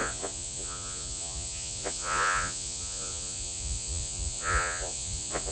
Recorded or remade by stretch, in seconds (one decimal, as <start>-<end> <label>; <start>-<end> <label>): 0.0-5.5 remade